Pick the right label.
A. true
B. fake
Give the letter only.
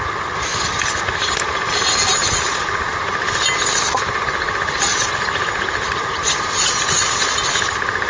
A